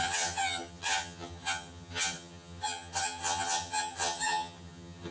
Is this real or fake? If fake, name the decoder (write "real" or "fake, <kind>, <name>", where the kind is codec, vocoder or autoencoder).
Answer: fake, vocoder, HiFi-GAN